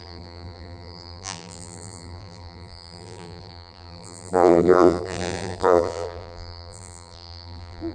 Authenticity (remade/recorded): remade